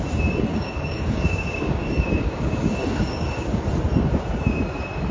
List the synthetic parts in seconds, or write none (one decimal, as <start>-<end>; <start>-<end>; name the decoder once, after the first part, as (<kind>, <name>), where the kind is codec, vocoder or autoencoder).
0.5-3.6 (codec, DAC)